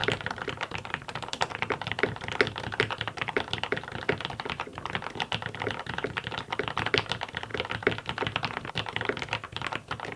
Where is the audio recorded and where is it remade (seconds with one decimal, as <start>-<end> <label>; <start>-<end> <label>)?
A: 0.0-2.0 remade; 2.0-10.2 recorded